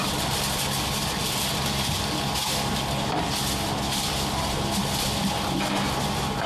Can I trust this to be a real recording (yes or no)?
yes